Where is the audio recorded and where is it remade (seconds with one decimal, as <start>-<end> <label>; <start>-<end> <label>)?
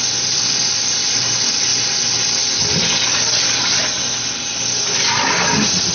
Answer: 0.0-5.9 recorded